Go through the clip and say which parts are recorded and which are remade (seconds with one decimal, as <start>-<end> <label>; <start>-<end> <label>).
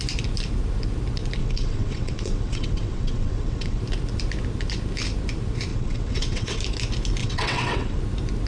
0.0-1.4 recorded; 1.4-3.8 remade; 3.8-5.7 recorded; 5.7-6.6 remade; 6.6-7.2 recorded; 7.2-8.0 remade; 8.0-8.5 recorded